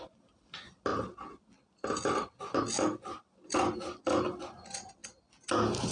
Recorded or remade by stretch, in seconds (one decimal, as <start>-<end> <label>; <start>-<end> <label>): 0.0-5.9 recorded